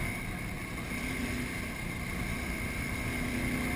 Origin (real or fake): real